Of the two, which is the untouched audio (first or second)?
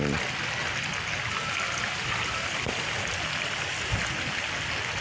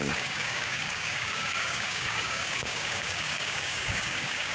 first